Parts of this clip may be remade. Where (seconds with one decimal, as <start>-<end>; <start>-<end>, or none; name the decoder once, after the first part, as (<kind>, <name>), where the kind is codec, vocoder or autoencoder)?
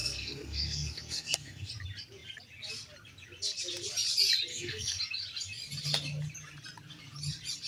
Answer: 0.0-1.7 (codec, SNAC); 4.5-5.0